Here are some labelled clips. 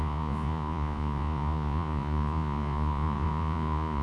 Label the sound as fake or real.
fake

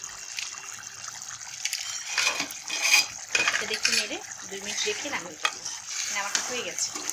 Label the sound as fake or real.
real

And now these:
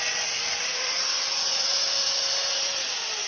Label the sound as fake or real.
real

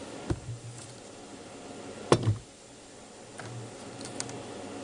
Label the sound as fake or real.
real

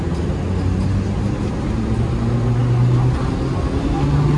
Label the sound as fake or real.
real